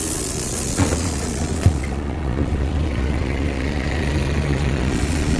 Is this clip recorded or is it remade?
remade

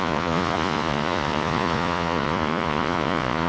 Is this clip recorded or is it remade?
remade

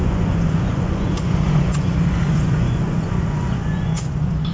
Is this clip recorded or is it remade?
remade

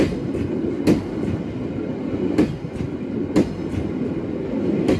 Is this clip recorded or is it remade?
recorded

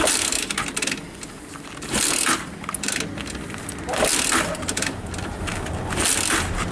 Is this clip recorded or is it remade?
recorded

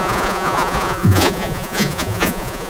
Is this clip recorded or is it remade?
remade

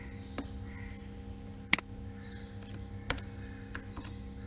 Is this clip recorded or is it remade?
recorded